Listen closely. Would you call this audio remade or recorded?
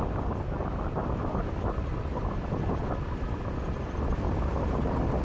recorded